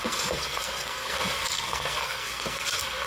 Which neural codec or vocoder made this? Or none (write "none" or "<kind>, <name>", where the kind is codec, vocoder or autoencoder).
codec, SNAC